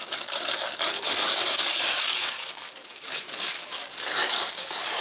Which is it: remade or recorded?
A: remade